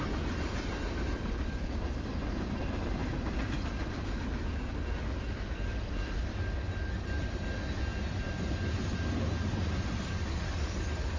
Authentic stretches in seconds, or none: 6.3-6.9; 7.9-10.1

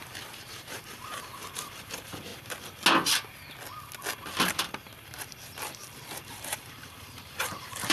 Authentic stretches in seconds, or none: 2.3-6.2

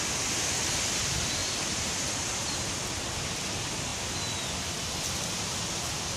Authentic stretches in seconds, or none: 0.0-1.4; 2.7-6.2

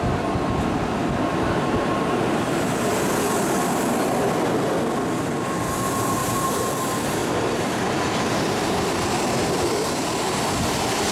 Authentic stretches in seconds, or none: 0.0-1.3; 2.6-6.2; 6.8-7.2; 8.7-11.1

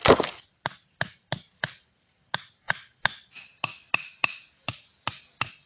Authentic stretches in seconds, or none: 1.3-5.7

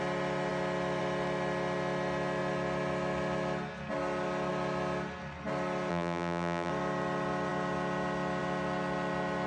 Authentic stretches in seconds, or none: 0.0-5.9; 6.7-9.5

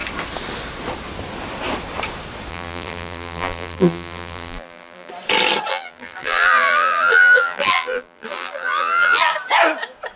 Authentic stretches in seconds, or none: 0.0-2.5; 5.1-5.7; 9.3-10.2

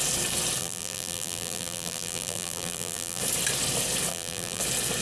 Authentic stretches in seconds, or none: 0.0-0.6; 3.2-4.1; 4.6-5.0